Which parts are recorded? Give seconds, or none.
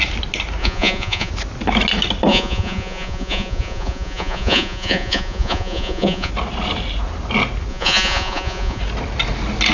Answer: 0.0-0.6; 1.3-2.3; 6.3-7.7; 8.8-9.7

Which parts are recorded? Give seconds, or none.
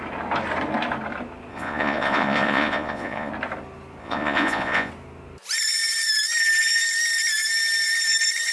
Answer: 0.0-1.5; 3.3-4.0; 4.9-8.5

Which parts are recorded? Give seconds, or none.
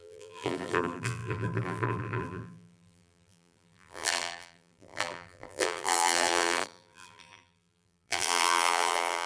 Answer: none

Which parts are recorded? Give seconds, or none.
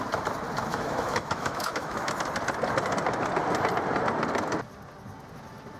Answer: 0.0-0.7; 2.1-5.8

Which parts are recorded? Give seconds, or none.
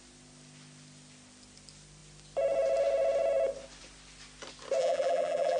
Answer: 0.0-4.8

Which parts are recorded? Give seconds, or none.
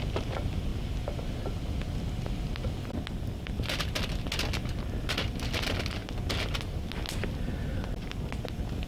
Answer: 0.0-8.9